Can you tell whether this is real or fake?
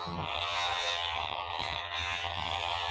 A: fake